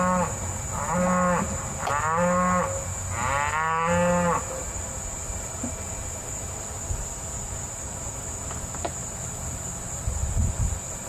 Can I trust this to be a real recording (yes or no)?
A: yes